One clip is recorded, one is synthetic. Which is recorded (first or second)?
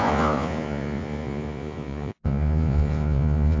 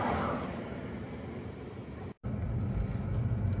second